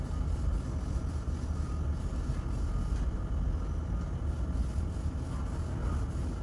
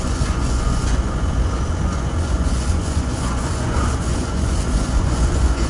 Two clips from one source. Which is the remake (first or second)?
second